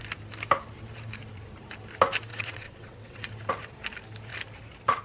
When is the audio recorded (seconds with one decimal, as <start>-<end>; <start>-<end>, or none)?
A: 0.0-2.3; 3.3-5.0